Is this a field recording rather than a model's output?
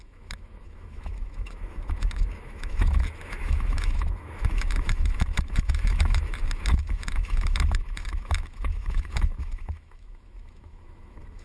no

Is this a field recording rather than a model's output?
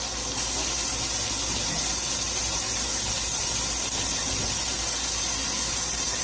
yes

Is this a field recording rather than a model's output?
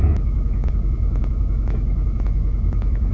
no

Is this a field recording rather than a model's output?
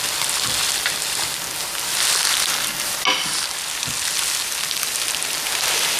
yes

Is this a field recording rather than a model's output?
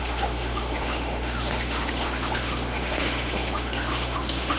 no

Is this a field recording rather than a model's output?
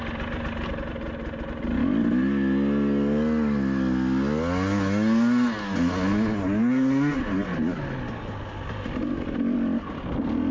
yes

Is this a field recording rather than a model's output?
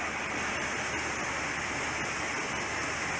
yes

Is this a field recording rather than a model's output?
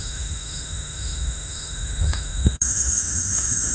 no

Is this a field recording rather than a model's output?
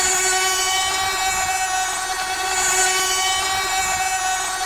yes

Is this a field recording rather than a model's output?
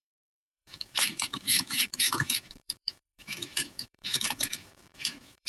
no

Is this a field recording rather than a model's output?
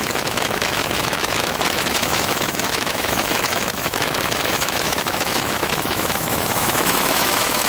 no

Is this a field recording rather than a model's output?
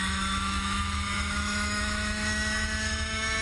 no